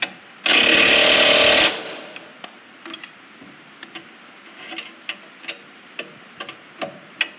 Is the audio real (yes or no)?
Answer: yes